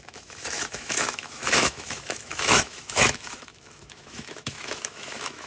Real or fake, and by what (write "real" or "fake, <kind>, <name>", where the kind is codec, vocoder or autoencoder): fake, autoencoder, DAC-VAE